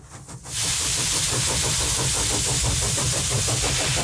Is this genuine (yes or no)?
yes